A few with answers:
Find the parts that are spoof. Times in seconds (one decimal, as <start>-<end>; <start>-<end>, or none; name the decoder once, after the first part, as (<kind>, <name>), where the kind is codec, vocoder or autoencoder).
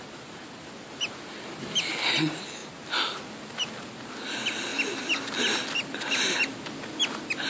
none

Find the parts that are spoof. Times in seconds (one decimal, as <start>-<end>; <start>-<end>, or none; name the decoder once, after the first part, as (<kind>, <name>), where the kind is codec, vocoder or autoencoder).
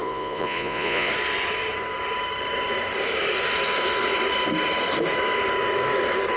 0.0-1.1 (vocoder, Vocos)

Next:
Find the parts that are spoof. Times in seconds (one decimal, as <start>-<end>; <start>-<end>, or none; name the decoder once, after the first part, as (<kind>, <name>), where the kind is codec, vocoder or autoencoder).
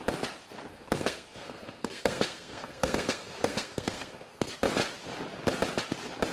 0.7-4.5 (codec, SNAC)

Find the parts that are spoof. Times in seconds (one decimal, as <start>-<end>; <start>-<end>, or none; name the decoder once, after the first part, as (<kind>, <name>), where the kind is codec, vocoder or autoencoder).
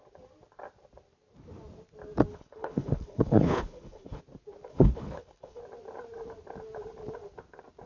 2.3-4.2 (codec, HILCodec); 4.7-5.6